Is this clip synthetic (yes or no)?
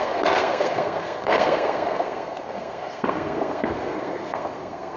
yes